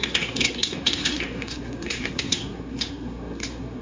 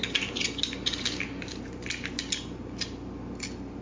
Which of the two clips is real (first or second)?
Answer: second